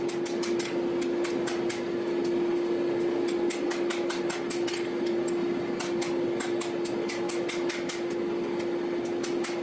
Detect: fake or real real